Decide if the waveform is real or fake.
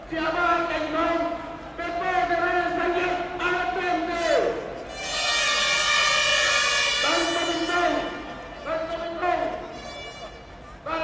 real